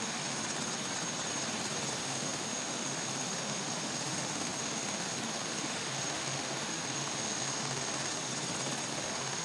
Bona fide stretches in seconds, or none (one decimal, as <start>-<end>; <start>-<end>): 0.4-1.9; 8.3-8.9

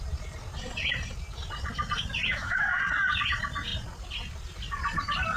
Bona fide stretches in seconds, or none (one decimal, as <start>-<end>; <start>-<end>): 0.0-2.3; 2.8-5.4

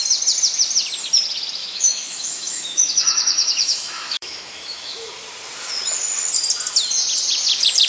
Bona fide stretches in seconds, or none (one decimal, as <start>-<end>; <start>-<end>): 0.0-1.6; 5.1-7.9

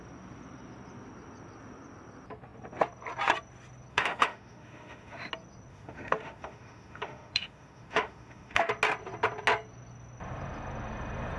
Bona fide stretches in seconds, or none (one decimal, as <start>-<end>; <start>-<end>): 0.0-3.9; 5.3-5.7; 8.7-11.4

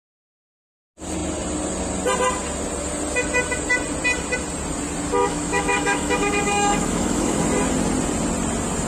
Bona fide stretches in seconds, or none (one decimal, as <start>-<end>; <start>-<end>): 0.0-5.2; 7.4-8.9

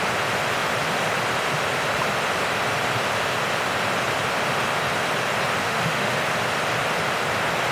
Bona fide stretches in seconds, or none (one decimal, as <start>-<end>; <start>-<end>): 0.0-5.6; 6.2-7.7